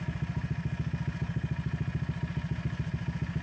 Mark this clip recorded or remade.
recorded